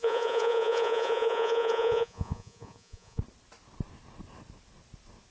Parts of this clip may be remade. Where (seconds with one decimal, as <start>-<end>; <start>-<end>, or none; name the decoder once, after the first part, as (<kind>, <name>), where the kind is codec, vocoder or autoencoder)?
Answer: 0.0-3.2 (vocoder, Vocos)